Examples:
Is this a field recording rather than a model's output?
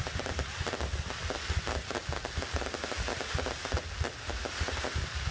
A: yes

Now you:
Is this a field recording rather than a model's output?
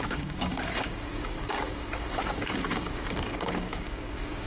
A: no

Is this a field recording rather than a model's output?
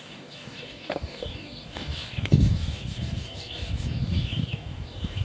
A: no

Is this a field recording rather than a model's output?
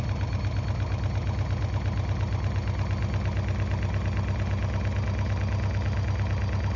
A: yes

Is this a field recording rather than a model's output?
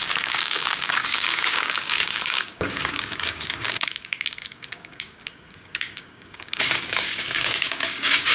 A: no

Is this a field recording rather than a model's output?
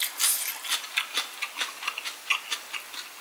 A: yes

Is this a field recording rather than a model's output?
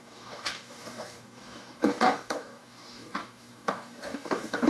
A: no